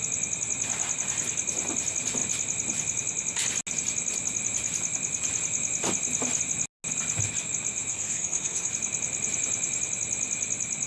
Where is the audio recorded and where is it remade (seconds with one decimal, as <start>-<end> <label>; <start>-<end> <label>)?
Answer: 0.0-7.9 recorded; 7.9-8.7 remade; 8.7-10.9 recorded